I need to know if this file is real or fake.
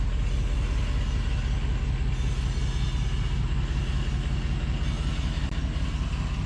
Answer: real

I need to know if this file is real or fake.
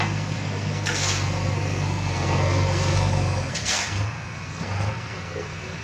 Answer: fake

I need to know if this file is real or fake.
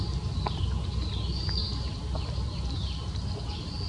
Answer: real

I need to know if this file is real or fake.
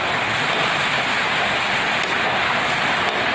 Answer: real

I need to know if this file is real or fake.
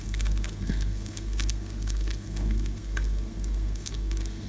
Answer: fake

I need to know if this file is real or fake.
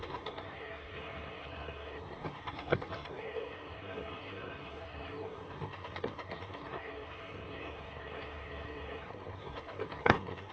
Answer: fake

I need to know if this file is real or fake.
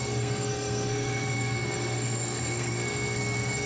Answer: fake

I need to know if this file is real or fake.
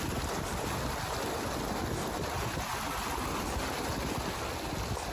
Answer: real